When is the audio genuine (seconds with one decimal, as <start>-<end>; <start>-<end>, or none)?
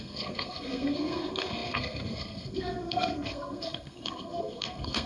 none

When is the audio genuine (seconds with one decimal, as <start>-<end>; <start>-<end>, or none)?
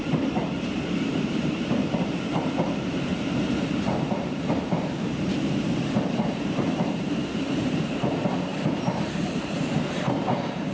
8.5-9.3